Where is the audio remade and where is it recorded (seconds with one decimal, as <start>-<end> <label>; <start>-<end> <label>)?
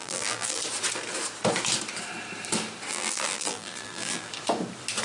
0.0-0.6 remade; 0.6-2.9 recorded; 2.9-4.3 remade; 4.3-5.0 recorded